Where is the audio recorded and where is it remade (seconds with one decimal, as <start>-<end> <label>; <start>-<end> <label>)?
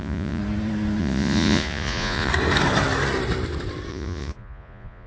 0.0-0.4 remade; 0.4-1.0 recorded; 1.0-2.3 remade; 2.3-3.9 recorded; 3.9-5.1 remade